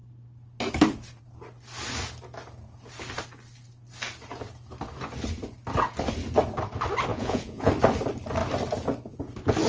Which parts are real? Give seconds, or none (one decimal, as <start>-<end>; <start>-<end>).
0.0-7.1; 7.7-9.7